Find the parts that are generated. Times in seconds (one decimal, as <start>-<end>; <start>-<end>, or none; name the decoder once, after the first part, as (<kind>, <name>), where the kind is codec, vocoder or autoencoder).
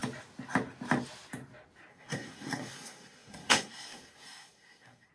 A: 1.9-5.1 (codec, SNAC)